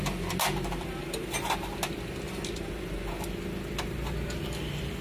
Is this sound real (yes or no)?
yes